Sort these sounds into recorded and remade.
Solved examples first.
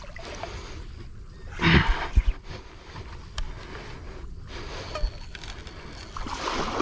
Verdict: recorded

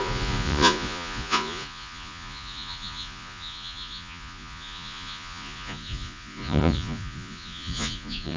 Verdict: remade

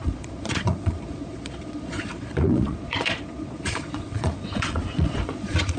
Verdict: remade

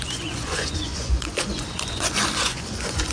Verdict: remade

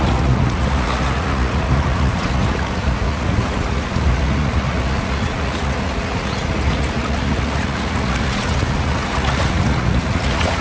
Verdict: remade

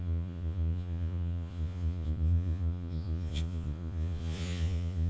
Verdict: remade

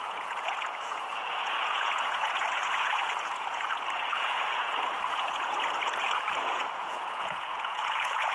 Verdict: remade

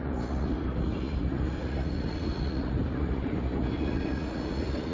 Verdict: remade